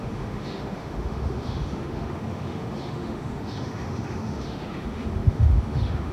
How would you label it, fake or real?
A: fake